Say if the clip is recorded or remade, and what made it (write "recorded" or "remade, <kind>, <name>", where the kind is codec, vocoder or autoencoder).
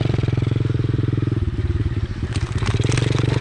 recorded